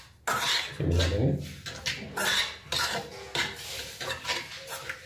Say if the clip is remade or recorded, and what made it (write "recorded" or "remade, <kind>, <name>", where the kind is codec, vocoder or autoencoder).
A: recorded